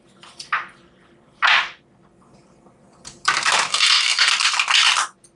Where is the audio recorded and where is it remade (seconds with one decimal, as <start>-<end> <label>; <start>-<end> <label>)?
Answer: 0.0-3.7 recorded; 3.7-4.3 remade; 4.3-5.4 recorded